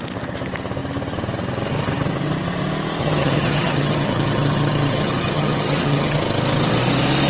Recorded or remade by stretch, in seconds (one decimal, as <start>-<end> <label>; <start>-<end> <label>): 0.0-3.0 recorded; 3.0-6.2 remade; 6.2-7.3 recorded